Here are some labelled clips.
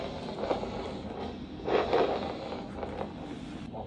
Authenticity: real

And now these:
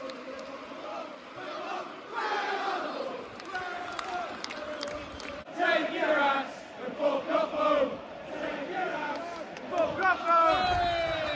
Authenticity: real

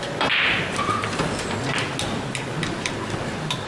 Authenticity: real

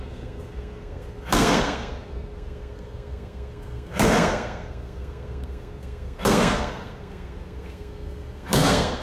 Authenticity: fake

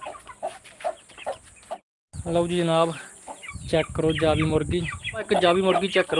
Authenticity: real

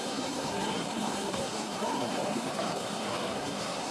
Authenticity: fake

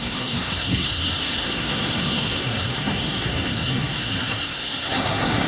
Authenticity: fake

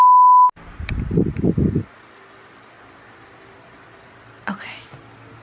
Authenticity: real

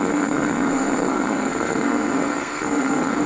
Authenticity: fake